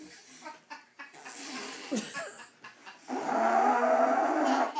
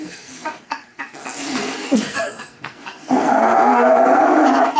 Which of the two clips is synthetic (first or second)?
second